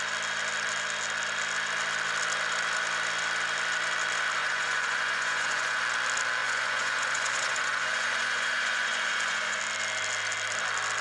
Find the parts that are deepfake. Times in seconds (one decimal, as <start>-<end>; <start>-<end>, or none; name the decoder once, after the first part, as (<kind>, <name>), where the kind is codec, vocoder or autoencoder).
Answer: 4.4-5.8 (vocoder, Vocos); 6.4-9.6